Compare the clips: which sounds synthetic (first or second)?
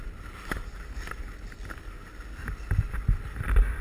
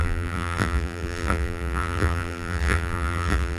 second